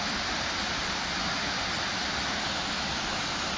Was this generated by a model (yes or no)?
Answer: no